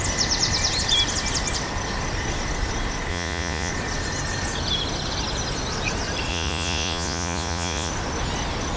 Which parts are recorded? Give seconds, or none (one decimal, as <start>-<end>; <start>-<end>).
0.0-3.1; 3.7-6.3; 7.9-8.8

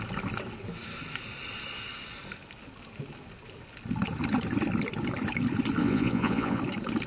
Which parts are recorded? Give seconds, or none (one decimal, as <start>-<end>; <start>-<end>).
0.0-5.8; 6.6-7.1

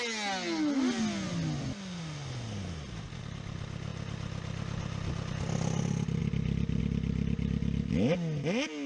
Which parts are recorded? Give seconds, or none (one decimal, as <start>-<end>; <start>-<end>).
0.0-8.9

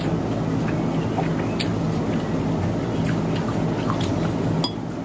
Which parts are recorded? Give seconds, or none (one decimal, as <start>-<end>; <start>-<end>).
0.0-5.0

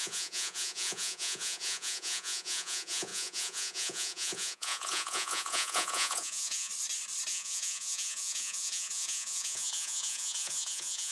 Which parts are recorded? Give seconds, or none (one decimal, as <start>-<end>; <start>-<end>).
6.7-7.3

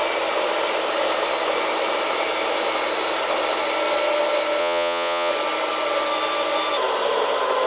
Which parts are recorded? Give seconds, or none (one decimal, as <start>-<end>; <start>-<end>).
0.0-4.6; 5.3-7.7

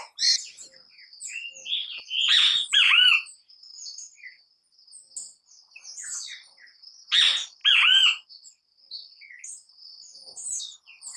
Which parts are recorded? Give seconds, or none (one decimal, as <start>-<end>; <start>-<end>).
0.0-11.2